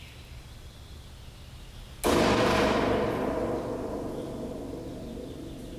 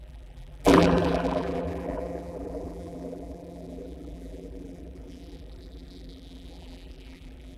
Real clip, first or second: first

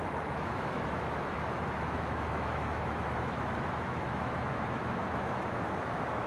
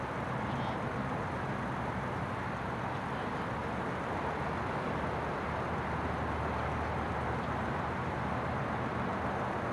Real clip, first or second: second